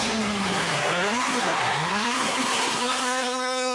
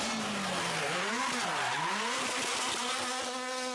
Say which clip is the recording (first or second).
second